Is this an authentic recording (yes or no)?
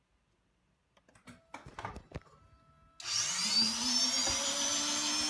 yes